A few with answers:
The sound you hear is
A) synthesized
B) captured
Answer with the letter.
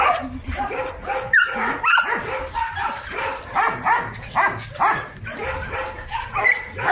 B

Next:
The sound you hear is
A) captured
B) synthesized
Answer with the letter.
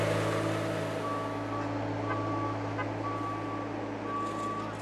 A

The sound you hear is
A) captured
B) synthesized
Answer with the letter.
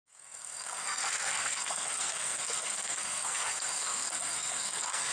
B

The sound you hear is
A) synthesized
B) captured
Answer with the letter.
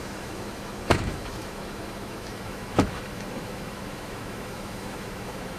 A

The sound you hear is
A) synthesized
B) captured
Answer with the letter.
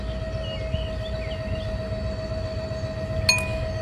B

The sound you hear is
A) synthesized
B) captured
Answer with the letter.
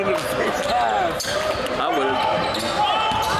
B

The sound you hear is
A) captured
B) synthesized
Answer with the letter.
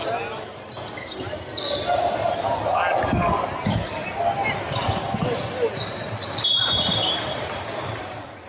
A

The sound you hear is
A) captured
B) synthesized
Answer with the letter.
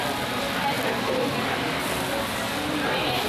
A